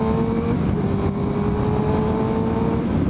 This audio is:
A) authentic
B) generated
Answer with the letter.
A